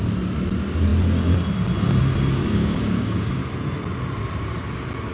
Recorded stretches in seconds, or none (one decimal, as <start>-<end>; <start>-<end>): 0.0-2.4; 3.4-5.1